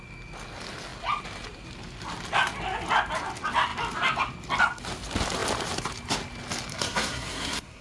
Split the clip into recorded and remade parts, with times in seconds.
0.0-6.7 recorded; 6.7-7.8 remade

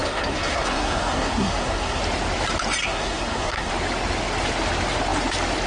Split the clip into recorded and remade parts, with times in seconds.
0.0-2.0 remade; 2.0-2.8 recorded; 2.8-3.7 remade; 3.7-5.7 recorded

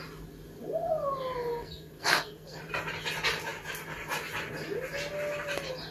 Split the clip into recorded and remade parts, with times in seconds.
0.0-1.5 recorded; 1.5-2.6 remade; 2.6-5.9 recorded

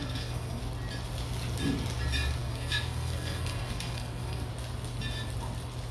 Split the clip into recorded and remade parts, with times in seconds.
0.0-0.6 remade; 0.6-2.4 recorded; 2.4-4.5 remade; 4.5-5.9 recorded

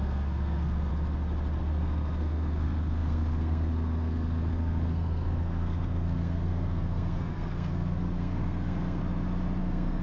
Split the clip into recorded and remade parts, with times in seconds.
0.0-0.9 remade; 0.9-1.6 recorded; 1.6-9.0 remade; 9.0-9.6 recorded; 9.6-10.0 remade